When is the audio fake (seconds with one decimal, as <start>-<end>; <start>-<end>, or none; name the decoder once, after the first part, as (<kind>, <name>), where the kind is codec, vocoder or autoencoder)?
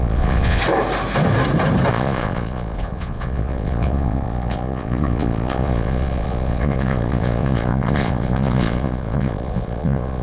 0.0-0.6 (vocoder, Vocos); 1.9-10.2